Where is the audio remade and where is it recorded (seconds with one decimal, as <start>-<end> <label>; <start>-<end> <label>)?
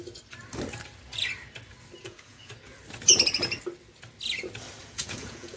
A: 0.0-2.0 recorded; 2.0-2.5 remade; 2.5-4.8 recorded; 4.8-5.6 remade